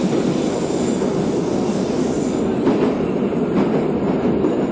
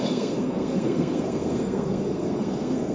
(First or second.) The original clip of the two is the first